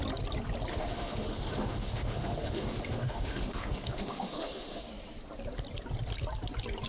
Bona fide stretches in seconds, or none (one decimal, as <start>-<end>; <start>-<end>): 0.0-0.7; 4.8-6.9